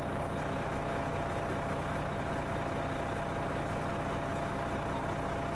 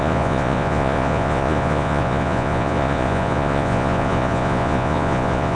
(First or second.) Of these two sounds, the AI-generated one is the second